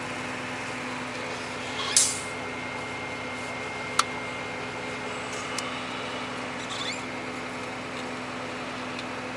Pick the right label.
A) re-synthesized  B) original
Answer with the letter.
B